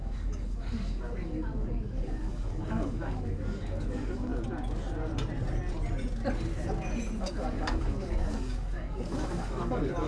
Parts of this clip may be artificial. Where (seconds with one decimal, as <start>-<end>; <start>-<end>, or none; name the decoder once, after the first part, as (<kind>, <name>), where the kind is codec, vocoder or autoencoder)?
0.0-4.3 (codec, DAC); 7.2-10.1